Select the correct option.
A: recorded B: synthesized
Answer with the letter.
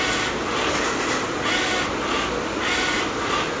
A